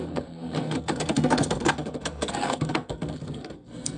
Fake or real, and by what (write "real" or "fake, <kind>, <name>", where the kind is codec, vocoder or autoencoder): fake, codec, SNAC